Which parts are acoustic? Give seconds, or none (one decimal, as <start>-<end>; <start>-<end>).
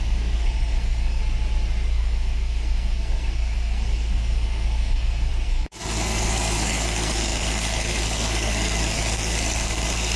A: 1.2-1.9